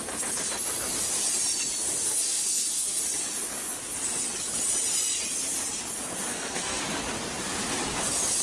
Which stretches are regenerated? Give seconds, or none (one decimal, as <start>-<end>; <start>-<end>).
2.0-3.0; 6.3-6.8